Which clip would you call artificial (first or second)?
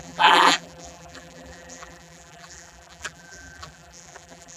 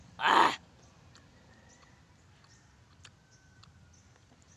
first